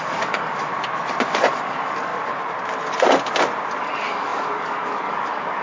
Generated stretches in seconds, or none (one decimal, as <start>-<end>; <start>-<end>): 0.0-0.7; 1.3-2.1; 3.8-5.6